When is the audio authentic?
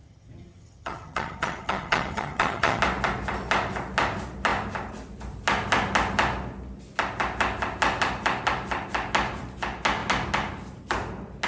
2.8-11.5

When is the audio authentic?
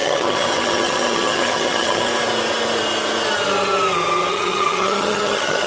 2.1-4.3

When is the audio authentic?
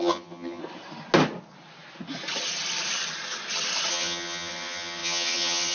0.6-3.9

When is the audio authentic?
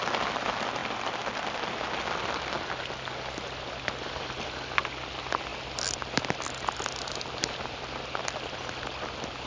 0.0-9.5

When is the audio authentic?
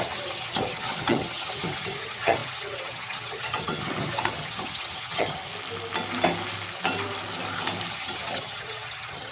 5.5-7.9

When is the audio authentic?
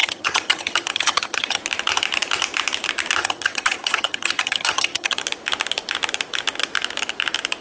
1.6-3.2; 5.2-7.6